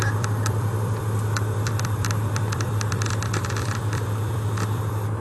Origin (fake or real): fake